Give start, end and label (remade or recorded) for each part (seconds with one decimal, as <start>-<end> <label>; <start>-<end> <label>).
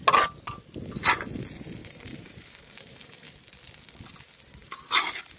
0.0-1.8 recorded; 1.8-3.3 remade; 3.3-4.6 recorded; 4.6-5.4 remade